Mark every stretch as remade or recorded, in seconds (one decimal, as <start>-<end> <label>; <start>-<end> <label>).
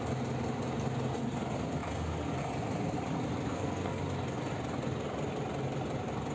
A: 0.0-3.5 recorded; 3.5-4.0 remade; 4.0-6.3 recorded